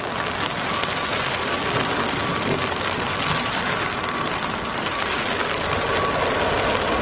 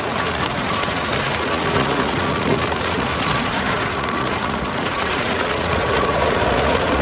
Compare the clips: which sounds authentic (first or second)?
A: first